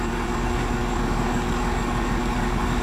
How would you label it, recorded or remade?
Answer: remade